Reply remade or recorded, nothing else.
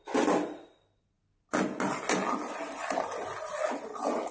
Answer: recorded